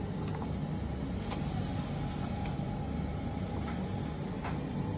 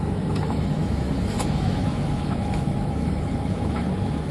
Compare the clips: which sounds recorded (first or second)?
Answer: first